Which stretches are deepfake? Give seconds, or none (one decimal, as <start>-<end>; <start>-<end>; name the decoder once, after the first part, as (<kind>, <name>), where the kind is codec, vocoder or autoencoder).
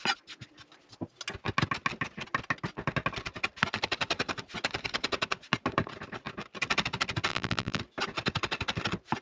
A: 7.3-7.8 (vocoder, BigVGAN v2)